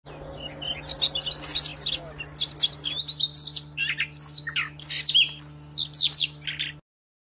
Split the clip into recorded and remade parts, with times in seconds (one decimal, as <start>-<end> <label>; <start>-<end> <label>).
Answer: 0.0-7.4 recorded